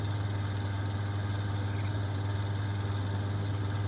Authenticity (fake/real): real